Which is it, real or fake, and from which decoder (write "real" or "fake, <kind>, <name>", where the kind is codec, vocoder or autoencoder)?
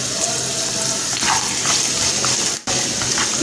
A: fake, vocoder, BigVGAN v2